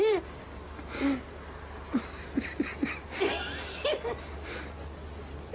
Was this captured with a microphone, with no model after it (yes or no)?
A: yes